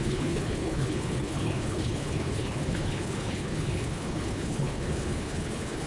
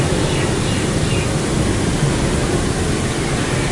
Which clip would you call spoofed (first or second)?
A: first